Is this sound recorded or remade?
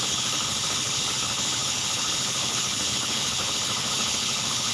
remade